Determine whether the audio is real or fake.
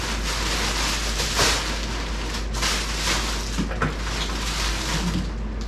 real